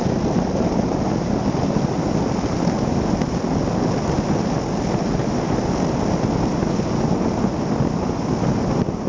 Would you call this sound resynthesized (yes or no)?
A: no